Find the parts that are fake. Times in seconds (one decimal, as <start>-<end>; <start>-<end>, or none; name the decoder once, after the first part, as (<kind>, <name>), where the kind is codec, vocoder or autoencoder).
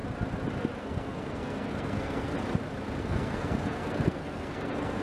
0.8-2.3 (codec, SNAC); 3.0-5.0